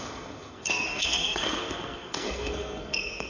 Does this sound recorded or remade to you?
remade